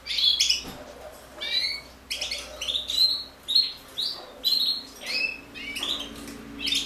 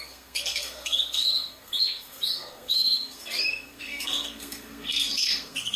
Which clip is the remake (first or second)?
second